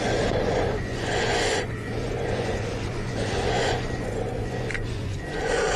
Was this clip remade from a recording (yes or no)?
yes